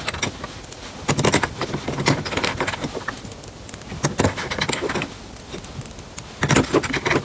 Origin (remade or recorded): recorded